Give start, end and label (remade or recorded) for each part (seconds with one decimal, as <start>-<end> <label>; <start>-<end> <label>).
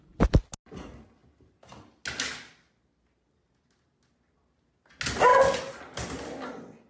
0.0-6.9 recorded